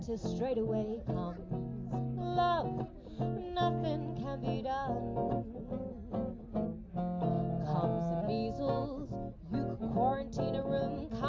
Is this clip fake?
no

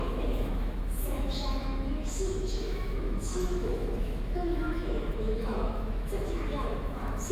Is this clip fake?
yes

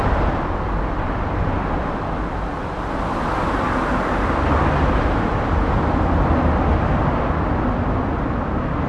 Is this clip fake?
no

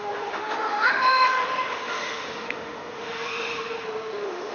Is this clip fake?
yes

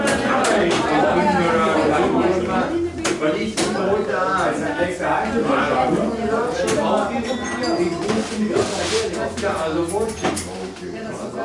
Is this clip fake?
no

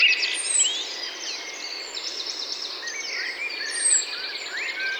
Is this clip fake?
no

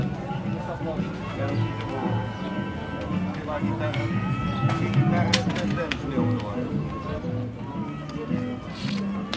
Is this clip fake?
no